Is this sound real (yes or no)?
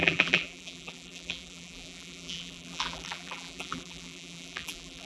no